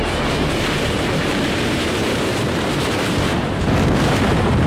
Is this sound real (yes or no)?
no